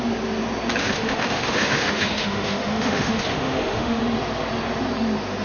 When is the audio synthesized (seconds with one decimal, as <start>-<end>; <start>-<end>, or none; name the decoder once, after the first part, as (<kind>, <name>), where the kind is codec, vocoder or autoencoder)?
0.8-4.0 (autoencoder, DAC-VAE)